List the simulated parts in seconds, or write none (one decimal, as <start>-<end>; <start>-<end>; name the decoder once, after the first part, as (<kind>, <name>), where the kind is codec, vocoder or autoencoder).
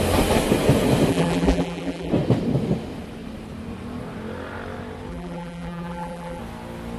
1.1-2.1 (vocoder, BigVGAN v2); 5.1-6.4